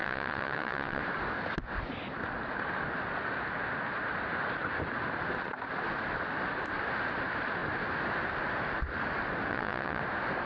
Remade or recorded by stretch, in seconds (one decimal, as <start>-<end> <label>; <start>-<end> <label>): 0.0-1.0 remade; 1.0-9.5 recorded; 9.5-10.0 remade; 10.0-10.5 recorded